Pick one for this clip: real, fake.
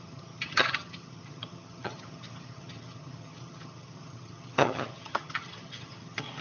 fake